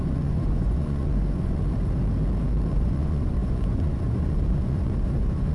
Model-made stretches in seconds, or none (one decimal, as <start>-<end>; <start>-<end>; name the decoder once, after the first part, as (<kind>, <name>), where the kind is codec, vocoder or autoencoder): 0.0-1.6 (vocoder, Vocos); 2.7-5.5